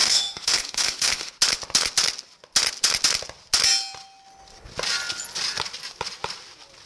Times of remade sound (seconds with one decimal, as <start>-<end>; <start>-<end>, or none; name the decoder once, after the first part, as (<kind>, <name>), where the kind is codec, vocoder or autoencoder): 0.0-1.3 (autoencoder, DAC-VAE)